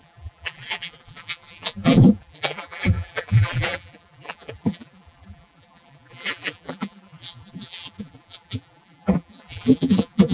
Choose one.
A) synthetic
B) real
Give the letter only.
A